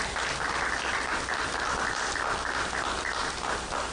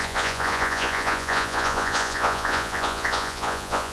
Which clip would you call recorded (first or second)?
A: first